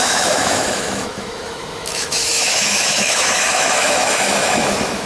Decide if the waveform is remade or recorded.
remade